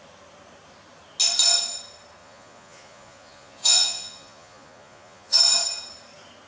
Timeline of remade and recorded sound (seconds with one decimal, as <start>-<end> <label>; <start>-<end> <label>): 0.0-2.2 recorded; 2.2-5.4 remade; 5.4-6.5 recorded